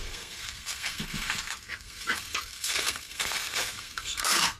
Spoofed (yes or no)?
yes